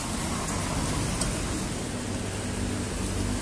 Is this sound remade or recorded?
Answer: recorded